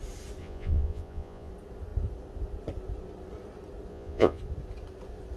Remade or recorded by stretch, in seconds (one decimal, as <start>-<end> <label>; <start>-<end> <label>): 0.0-0.4 recorded; 0.4-1.5 remade; 1.5-3.9 recorded; 3.9-4.4 remade; 4.4-5.4 recorded